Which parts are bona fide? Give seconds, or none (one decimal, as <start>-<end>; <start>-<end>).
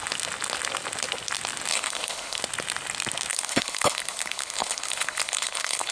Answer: 0.0-1.7; 2.4-3.3